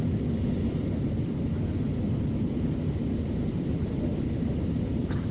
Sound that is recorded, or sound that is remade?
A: recorded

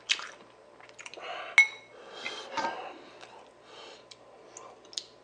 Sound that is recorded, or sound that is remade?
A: recorded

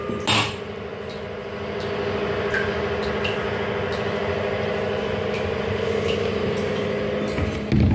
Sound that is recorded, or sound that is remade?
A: recorded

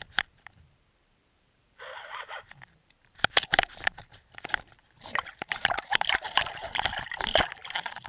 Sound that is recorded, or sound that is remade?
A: remade